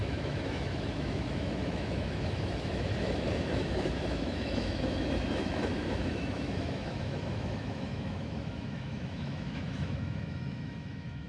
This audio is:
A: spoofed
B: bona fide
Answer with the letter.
A